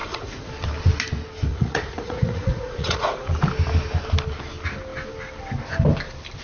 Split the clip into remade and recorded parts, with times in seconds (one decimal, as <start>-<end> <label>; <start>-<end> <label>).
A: 0.0-0.5 remade; 0.5-1.5 recorded; 1.5-3.3 remade; 3.3-6.4 recorded